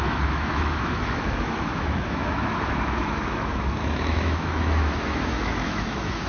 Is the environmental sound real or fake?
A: fake